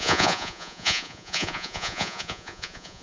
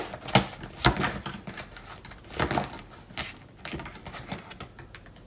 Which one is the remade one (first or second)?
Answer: first